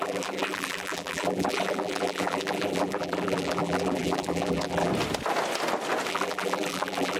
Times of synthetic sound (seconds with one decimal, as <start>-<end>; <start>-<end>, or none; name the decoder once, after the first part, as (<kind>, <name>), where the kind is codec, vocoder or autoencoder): 0.0-4.9 (vocoder, BigVGAN v2); 6.1-7.2